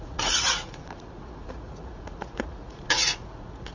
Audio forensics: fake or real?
fake